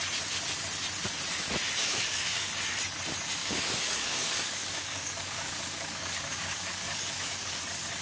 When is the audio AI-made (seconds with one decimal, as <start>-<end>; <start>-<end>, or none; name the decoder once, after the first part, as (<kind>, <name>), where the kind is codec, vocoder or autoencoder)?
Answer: 1.8-2.5 (codec, DAC); 3.4-7.6